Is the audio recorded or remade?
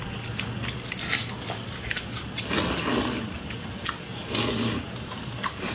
recorded